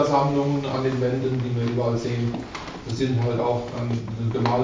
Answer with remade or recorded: recorded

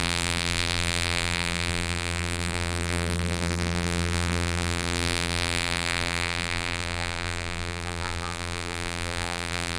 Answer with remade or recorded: remade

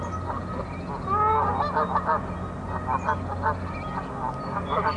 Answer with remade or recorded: recorded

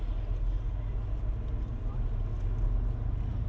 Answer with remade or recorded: recorded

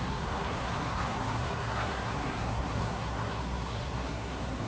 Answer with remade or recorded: remade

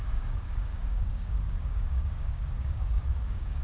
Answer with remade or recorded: remade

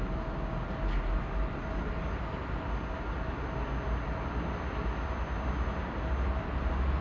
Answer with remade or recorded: recorded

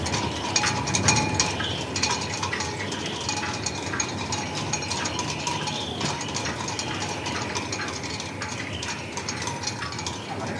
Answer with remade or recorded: recorded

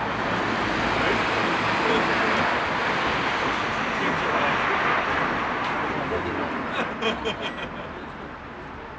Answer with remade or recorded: recorded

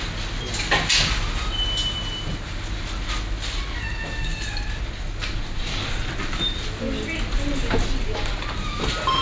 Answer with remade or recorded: recorded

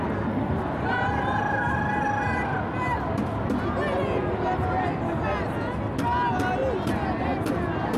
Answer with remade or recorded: recorded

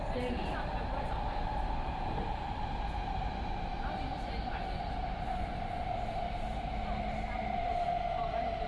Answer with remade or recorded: recorded